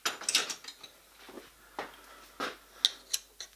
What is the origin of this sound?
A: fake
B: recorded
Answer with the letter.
B